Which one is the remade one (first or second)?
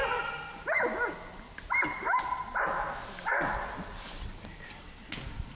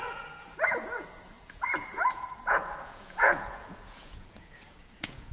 second